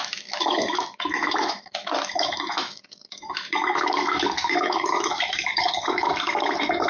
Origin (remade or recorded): remade